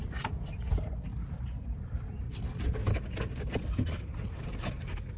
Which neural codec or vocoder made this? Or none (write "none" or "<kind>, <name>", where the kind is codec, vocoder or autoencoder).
none